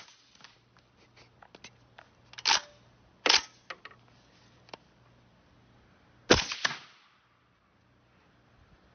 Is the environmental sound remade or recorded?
recorded